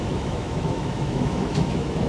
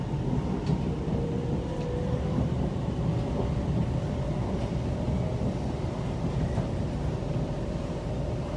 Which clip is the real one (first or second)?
second